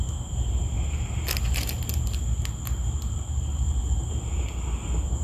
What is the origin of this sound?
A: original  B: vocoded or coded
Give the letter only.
A